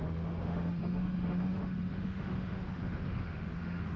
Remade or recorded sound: remade